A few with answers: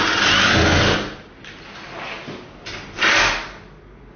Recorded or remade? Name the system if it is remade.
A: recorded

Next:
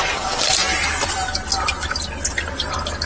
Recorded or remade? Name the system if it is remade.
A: recorded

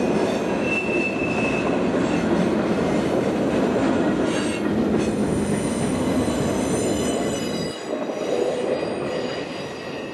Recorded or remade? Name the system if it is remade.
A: recorded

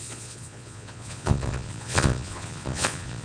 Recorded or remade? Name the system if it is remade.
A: remade, vocoder, Vocos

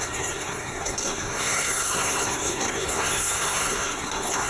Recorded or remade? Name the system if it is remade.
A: remade, codec, SNAC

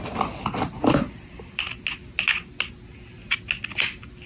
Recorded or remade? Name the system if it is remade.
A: recorded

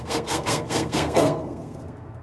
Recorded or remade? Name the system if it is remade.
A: remade, codec, SNAC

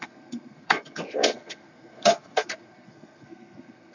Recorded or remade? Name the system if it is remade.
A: remade, codec, SNAC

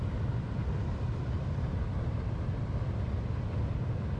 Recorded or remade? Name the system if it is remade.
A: recorded